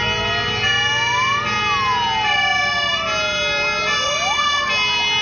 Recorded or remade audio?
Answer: recorded